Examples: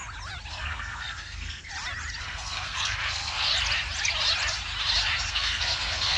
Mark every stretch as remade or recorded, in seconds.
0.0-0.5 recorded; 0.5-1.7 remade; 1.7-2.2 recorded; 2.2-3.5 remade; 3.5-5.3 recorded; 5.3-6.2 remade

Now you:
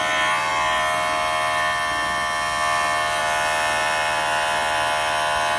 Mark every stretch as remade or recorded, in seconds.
0.0-5.6 recorded

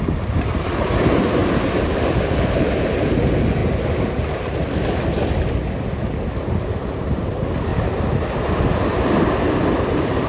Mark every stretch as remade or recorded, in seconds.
0.0-3.6 remade; 3.6-6.3 recorded; 6.3-10.3 remade